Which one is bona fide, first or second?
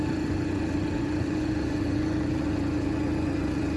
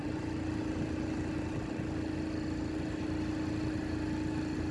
second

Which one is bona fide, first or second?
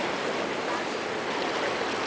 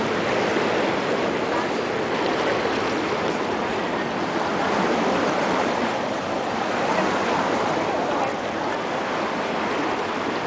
second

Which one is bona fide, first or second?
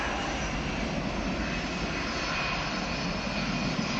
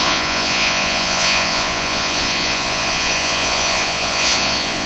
first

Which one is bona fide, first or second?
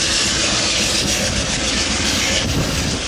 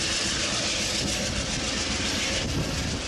second